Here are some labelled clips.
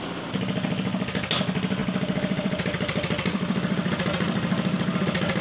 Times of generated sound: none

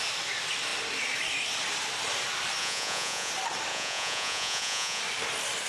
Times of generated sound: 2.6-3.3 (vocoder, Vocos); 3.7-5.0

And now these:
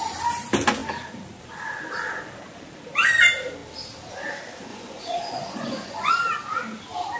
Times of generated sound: 4.7-6.1 (vocoder, Vocos)

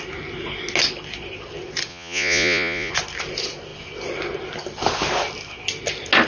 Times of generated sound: 1.9-2.9 (vocoder, Vocos)